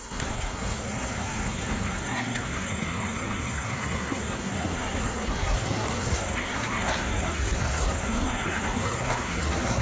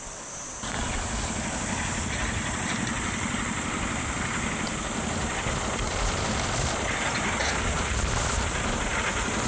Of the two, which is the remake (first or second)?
first